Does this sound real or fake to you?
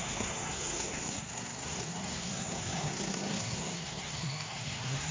fake